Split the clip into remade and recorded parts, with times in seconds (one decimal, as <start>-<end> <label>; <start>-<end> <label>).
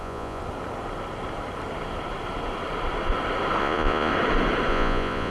0.0-0.4 remade; 0.4-3.6 recorded; 3.6-4.1 remade; 4.1-4.7 recorded; 4.7-5.3 remade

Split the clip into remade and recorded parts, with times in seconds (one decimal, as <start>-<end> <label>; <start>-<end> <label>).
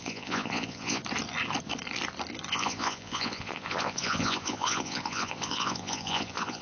0.0-1.0 remade; 1.0-2.5 recorded; 2.5-6.6 remade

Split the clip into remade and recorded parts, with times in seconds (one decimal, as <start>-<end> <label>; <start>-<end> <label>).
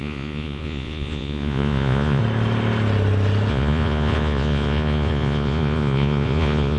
0.0-2.2 remade; 2.2-3.5 recorded; 3.5-6.8 remade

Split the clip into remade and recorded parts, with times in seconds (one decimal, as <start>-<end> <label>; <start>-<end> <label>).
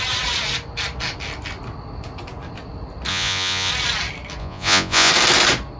0.0-3.1 recorded; 3.1-3.7 remade; 3.7-4.4 recorded; 4.4-5.1 remade; 5.1-5.8 recorded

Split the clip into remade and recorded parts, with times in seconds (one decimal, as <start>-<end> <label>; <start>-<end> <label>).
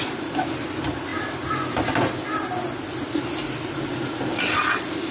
0.0-5.1 recorded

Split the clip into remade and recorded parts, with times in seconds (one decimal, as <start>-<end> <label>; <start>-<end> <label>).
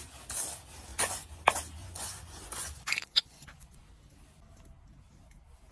0.0-0.9 recorded; 0.9-1.4 remade; 1.4-1.8 recorded; 1.8-3.8 remade; 3.8-5.7 recorded